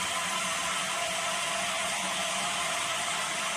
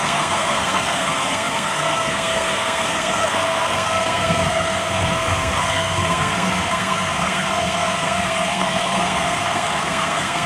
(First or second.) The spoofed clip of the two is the second